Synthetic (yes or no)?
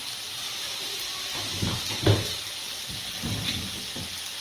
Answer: no